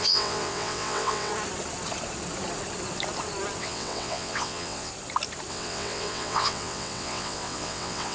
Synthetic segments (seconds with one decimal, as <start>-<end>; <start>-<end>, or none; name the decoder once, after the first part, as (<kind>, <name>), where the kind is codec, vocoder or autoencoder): 0.0-1.3 (vocoder, WaveNeXt); 3.6-4.9; 5.5-8.1